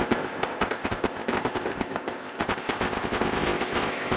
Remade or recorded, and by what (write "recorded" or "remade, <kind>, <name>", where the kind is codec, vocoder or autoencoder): remade, codec, ZipCodec